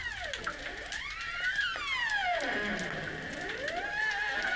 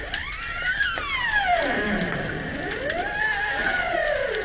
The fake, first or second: second